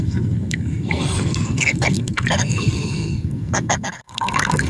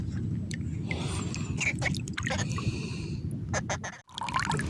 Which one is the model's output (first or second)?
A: first